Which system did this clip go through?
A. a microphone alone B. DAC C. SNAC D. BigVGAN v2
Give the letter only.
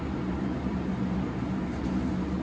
D